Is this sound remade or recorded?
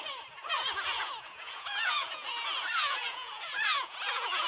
remade